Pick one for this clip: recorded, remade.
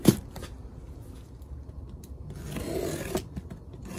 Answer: recorded